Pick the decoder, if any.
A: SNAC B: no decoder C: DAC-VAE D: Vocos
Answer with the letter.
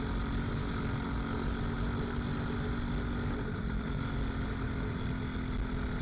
B